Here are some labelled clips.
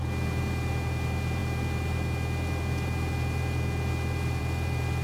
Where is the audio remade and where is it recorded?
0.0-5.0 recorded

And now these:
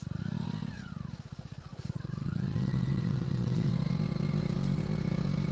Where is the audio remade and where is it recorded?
0.0-1.7 recorded; 1.7-3.7 remade; 3.7-5.5 recorded

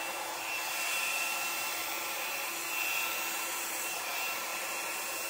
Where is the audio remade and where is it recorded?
0.0-1.8 remade; 1.8-3.4 recorded; 3.4-4.5 remade; 4.5-5.3 recorded

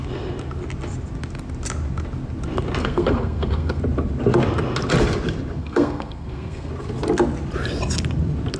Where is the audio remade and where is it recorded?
0.0-2.8 recorded; 2.8-3.8 remade; 3.8-5.6 recorded; 5.6-6.7 remade; 6.7-8.6 recorded

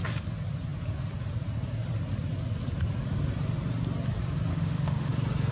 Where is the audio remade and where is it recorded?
0.0-4.5 recorded; 4.5-5.1 remade; 5.1-5.5 recorded

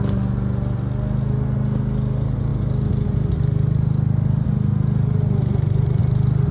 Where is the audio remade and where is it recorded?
0.0-6.5 recorded

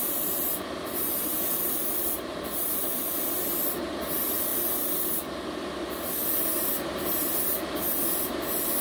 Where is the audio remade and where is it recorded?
0.0-8.8 recorded

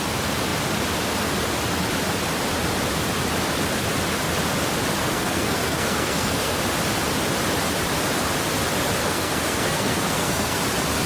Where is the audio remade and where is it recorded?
0.0-5.0 recorded; 5.0-6.6 remade; 6.6-9.0 recorded; 9.0-10.6 remade; 10.6-11.1 recorded